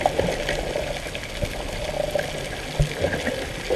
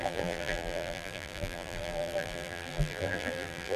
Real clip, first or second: first